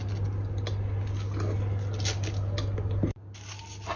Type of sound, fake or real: real